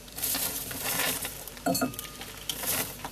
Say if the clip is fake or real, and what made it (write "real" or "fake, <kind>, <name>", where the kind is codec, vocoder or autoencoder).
fake, vocoder, BigVGAN v2